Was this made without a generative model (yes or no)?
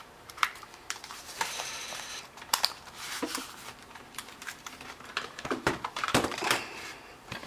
no